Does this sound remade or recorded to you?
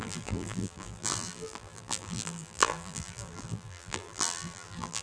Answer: remade